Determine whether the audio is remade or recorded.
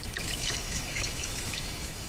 remade